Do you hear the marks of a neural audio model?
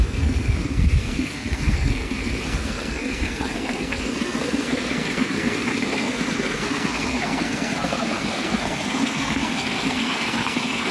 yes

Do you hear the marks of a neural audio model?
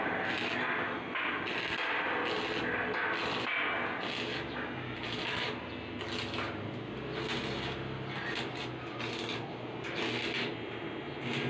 no